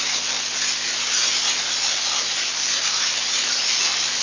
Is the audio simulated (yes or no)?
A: no